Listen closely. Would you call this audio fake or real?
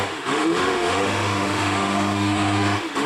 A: fake